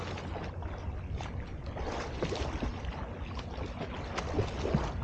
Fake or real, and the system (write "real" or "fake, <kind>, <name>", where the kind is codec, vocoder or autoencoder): real